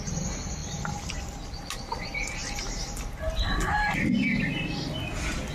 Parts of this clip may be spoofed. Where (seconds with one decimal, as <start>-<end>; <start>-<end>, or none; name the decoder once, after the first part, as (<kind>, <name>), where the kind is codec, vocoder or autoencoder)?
0.6-1.2 (vocoder, BigVGAN v2); 2.4-4.1